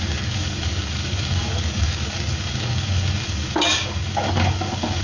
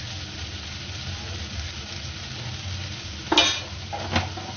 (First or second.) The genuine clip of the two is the second